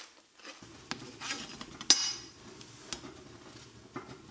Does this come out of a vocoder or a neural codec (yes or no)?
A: no